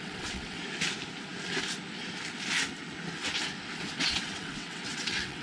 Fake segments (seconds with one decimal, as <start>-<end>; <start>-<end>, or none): 0.0-0.6; 3.8-5.4